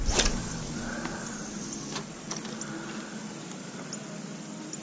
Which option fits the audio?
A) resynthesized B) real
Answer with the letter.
B